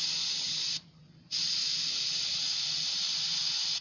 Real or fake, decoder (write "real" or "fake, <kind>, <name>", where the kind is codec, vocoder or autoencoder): real